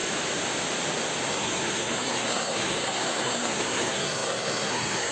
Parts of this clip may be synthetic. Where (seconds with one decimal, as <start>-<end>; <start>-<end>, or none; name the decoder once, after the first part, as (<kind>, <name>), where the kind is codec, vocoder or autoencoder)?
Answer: 1.3-5.1 (codec, SNAC)